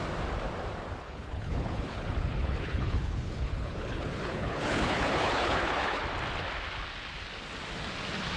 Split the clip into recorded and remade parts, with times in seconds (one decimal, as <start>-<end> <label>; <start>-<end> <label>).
0.0-1.0 recorded; 1.0-6.0 remade; 6.0-8.4 recorded